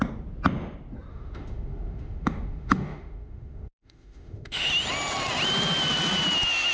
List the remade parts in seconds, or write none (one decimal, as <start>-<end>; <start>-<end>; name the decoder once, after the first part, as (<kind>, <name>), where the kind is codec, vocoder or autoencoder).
1.1-4.7 (autoencoder, DAC-VAE)